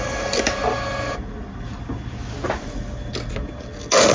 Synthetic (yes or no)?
no